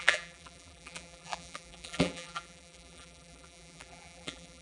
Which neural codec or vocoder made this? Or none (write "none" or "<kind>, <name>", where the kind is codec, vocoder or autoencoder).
vocoder, BigVGAN v2